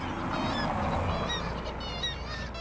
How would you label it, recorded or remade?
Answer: recorded